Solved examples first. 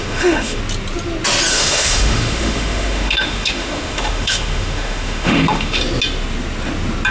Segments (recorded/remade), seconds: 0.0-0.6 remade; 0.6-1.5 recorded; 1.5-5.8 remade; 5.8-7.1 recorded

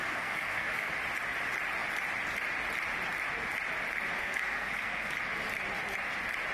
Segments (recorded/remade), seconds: 0.0-0.9 remade; 0.9-4.2 recorded; 4.2-5.1 remade; 5.1-6.5 recorded

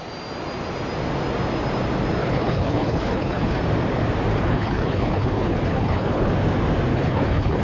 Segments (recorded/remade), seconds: 0.0-2.2 recorded; 2.2-3.6 remade; 3.6-4.3 recorded; 4.3-6.3 remade; 6.3-6.9 recorded; 6.9-7.6 remade

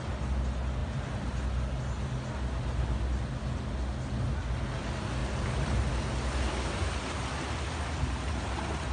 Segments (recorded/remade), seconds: 0.0-8.9 recorded

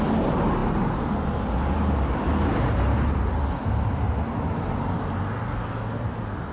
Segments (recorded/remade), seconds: 0.0-6.5 recorded

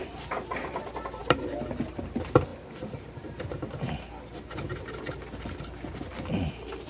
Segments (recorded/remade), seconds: 0.0-6.9 recorded

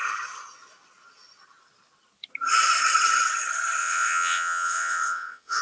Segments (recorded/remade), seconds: 0.0-3.8 recorded; 3.8-5.6 remade

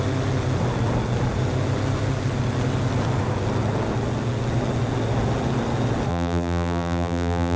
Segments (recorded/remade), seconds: 0.0-6.1 recorded; 6.1-7.6 remade